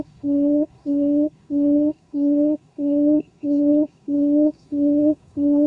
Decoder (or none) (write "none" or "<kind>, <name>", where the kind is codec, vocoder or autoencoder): codec, SNAC